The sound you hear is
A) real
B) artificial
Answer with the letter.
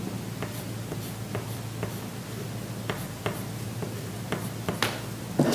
A